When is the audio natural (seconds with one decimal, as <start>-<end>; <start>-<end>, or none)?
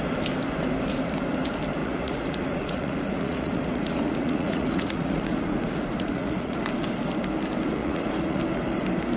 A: 0.0-1.8; 6.6-7.8; 8.4-9.2